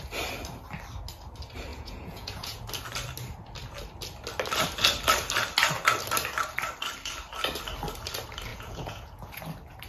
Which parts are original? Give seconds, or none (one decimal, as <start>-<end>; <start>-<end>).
0.0-1.7; 2.6-8.5; 9.4-9.9